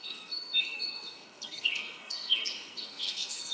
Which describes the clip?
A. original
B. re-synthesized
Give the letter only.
B